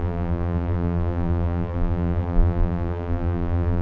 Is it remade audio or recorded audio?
remade